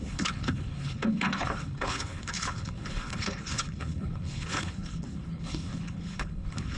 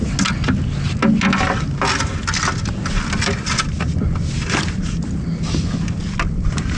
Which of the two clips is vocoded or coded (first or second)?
first